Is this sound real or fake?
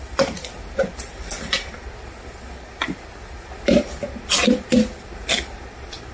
real